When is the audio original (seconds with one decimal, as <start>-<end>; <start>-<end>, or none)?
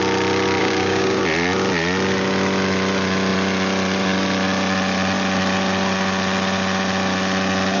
0.0-0.6; 1.2-7.8